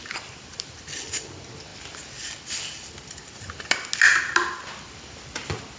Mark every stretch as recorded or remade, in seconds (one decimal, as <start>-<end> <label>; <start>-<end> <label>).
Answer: 0.0-5.8 recorded